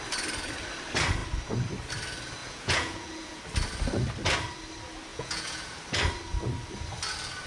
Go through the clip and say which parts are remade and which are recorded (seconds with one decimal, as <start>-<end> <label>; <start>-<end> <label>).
0.0-2.4 recorded; 2.4-3.4 remade; 3.4-5.1 recorded; 5.1-5.8 remade; 5.8-7.5 recorded